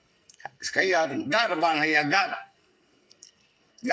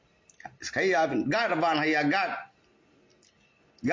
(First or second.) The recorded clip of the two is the second